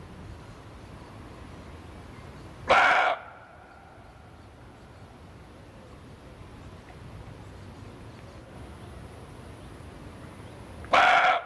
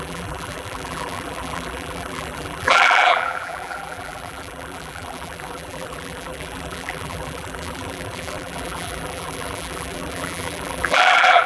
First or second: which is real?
first